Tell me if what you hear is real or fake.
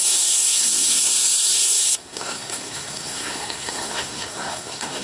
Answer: fake